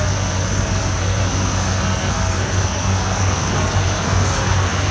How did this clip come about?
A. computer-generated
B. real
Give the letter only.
A